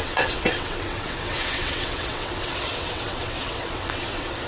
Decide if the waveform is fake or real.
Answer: fake